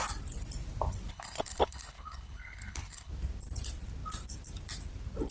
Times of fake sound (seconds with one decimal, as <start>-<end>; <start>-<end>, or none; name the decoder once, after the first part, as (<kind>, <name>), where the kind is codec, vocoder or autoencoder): 1.1-3.1 (codec, HILCodec)